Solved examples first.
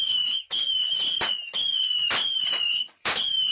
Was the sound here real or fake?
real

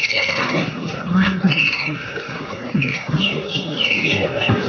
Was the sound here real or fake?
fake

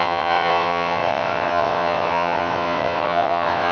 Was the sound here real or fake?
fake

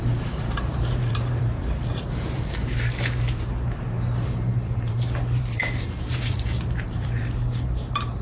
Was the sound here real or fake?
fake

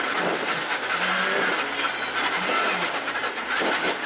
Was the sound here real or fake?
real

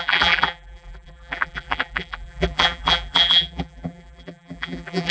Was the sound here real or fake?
fake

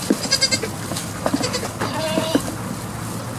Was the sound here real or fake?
real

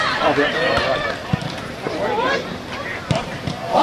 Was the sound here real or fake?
fake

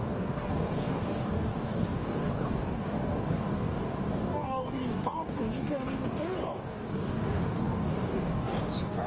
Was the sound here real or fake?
fake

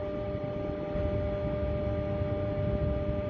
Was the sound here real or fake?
real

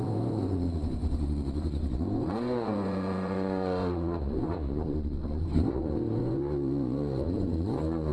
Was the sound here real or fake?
fake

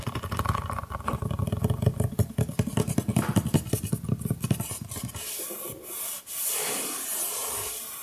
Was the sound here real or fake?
real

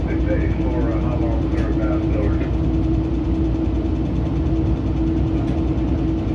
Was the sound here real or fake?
real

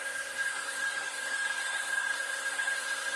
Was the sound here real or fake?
fake